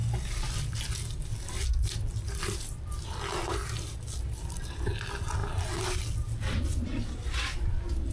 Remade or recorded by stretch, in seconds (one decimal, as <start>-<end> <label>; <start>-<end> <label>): 0.0-8.1 recorded